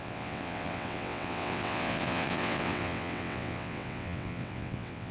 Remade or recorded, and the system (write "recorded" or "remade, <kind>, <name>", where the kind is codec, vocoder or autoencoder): remade, vocoder, WaveNeXt